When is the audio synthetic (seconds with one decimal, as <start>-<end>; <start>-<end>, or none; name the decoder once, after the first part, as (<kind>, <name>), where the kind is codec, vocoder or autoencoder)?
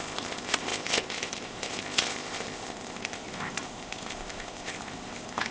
0.0-5.5 (codec, ZipCodec)